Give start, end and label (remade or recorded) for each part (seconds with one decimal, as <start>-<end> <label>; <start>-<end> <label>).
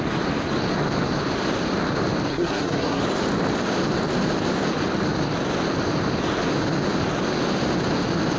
0.0-2.3 recorded; 2.3-3.0 remade; 3.0-8.4 recorded